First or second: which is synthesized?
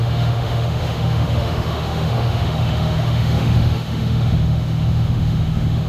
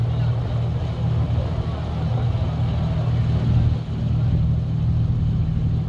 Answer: first